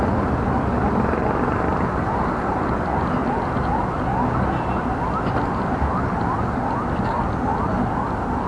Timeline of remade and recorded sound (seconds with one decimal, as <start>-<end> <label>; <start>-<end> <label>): 0.0-8.5 recorded